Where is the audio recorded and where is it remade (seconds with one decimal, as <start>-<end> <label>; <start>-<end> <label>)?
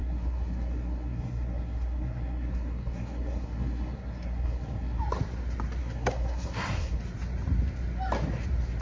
0.0-5.0 remade; 5.0-5.8 recorded; 5.8-7.0 remade; 7.0-8.8 recorded